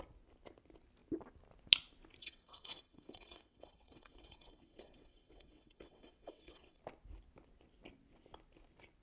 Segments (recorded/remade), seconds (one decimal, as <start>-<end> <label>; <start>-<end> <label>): 0.0-2.2 recorded; 2.2-6.8 remade; 6.8-9.0 recorded